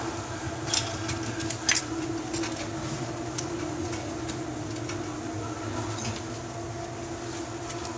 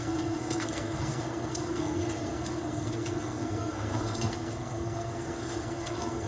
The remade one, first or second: second